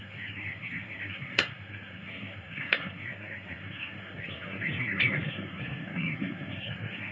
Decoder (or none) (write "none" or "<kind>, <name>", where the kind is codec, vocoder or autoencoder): codec, SNAC